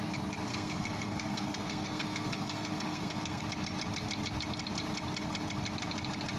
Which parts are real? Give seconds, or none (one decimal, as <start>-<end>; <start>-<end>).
0.0-0.5; 3.4-6.4